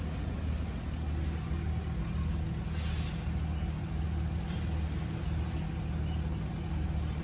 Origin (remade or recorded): recorded